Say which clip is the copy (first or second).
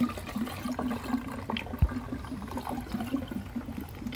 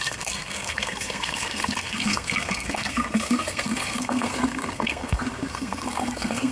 second